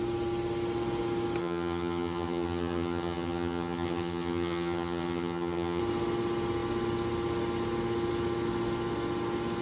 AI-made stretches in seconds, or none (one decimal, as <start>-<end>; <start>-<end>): 1.4-5.8

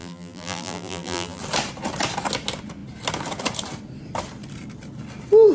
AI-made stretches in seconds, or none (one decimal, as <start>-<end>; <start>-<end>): 0.0-1.4

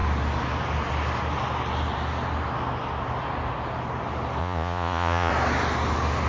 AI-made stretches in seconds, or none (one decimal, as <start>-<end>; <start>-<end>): 4.4-5.3